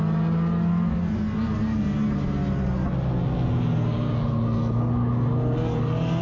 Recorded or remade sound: recorded